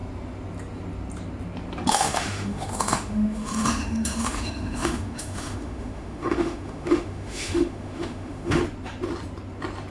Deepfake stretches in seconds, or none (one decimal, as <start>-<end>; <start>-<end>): 1.9-8.6